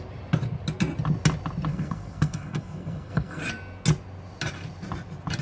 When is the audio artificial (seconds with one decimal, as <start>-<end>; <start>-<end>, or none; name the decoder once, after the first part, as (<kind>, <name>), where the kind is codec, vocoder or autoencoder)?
1.7-3.4 (codec, SNAC)